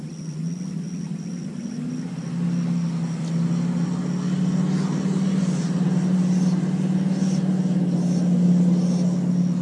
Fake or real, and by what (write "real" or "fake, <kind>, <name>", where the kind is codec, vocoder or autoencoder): real